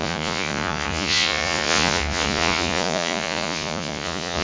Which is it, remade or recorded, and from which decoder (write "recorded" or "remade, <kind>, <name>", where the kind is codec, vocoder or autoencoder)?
remade, vocoder, Vocos